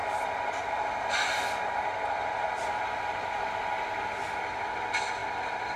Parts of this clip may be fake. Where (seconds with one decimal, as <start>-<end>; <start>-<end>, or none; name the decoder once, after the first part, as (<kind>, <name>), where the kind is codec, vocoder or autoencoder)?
0.0-3.5 (vocoder, BigVGAN v2); 5.2-5.8